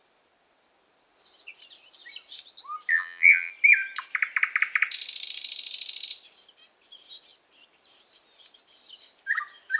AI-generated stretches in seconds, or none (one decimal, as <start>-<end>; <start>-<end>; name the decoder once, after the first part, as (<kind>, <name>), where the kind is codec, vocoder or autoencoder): 2.9-3.5 (vocoder, BigVGAN v2)